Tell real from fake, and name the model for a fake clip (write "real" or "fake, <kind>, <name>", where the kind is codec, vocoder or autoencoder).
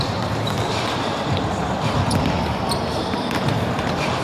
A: fake, vocoder, BigVGAN v2